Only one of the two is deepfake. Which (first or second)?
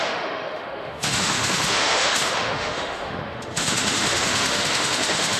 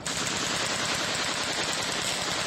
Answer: first